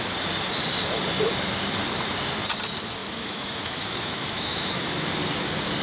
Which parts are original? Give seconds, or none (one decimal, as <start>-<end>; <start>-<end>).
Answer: 0.0-3.0; 5.1-5.8